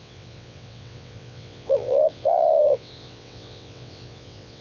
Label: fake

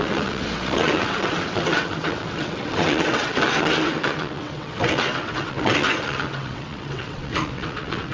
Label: fake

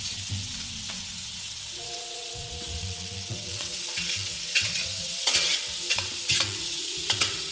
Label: fake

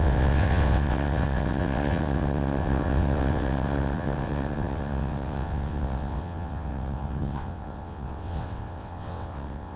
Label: fake